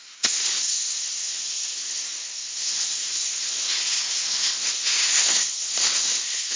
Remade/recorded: remade